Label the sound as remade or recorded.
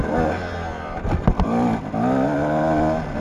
recorded